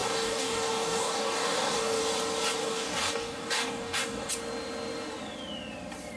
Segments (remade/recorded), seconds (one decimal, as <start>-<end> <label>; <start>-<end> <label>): 0.0-2.0 remade; 2.0-2.6 recorded; 2.6-4.3 remade; 4.3-6.2 recorded